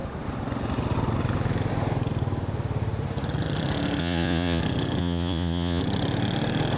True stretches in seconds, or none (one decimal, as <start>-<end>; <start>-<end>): 0.0-4.0; 4.6-5.0; 5.8-6.8